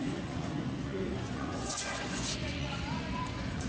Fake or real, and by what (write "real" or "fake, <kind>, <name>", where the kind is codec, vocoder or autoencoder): fake, vocoder, Vocos